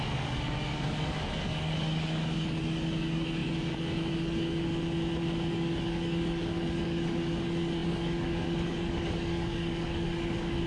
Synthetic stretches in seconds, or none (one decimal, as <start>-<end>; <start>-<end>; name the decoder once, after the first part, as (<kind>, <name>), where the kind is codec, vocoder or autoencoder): 0.0-4.7 (codec, DAC); 5.5-10.7